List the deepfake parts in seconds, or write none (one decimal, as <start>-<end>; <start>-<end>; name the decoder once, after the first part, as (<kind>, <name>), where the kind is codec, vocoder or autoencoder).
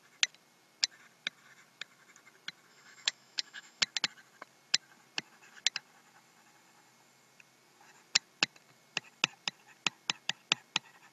2.7-3.8 (autoencoder, DAC-VAE)